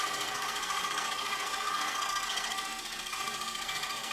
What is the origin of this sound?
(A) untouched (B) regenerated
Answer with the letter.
B